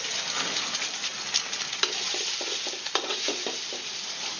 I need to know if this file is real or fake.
real